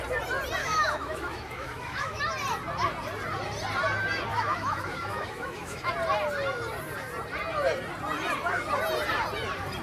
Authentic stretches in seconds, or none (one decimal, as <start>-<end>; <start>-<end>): 0.0-0.6; 2.2-4.3; 5.9-9.8